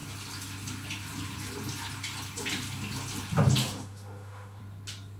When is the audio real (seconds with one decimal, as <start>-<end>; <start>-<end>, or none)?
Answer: 0.0-3.6; 4.6-5.2